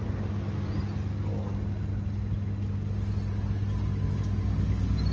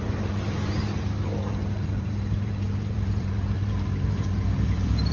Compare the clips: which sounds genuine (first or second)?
first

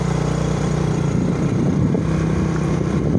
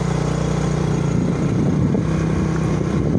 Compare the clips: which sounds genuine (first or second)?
second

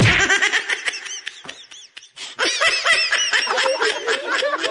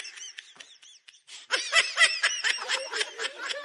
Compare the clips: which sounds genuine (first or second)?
first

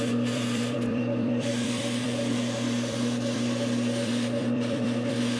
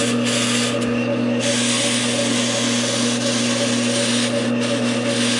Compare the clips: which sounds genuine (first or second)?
second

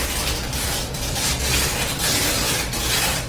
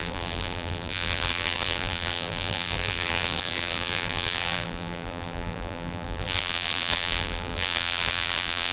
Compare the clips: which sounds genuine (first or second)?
first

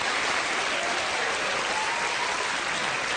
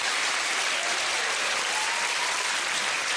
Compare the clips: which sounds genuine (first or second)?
first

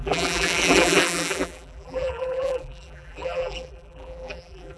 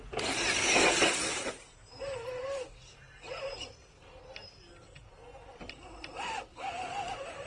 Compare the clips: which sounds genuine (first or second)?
second